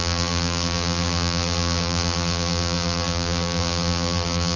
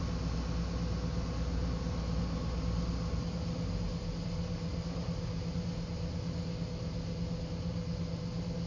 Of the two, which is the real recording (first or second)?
second